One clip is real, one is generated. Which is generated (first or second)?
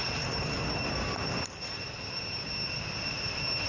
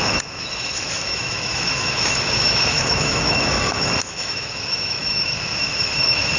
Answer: second